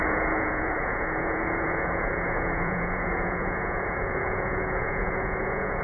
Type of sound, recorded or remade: remade